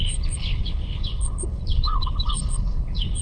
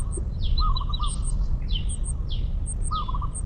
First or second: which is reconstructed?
first